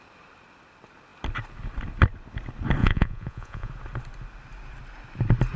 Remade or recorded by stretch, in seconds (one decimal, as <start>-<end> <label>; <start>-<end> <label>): 0.0-2.8 recorded; 2.8-3.7 remade; 3.7-5.6 recorded